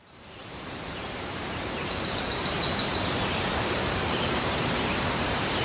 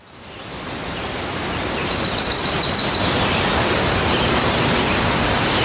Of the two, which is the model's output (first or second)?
first